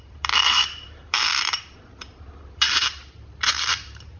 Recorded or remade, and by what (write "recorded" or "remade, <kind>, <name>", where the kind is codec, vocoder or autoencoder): remade, vocoder, BigVGAN v2